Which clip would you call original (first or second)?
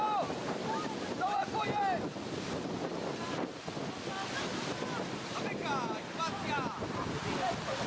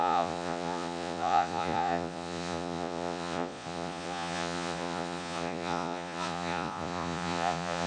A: first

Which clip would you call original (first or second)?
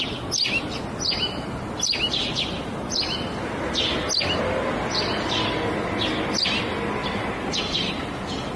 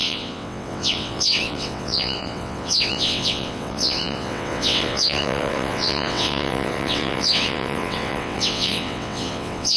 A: first